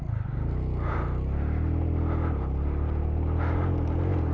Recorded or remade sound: recorded